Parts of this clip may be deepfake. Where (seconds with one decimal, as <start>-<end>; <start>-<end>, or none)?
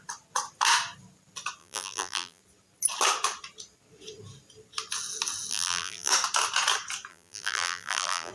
1.6-2.4; 5.5-6.1; 7.1-8.3